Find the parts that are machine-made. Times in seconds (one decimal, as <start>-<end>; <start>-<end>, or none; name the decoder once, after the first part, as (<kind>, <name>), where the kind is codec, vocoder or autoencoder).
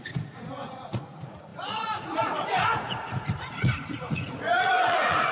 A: 0.0-5.3 (vocoder, Vocos)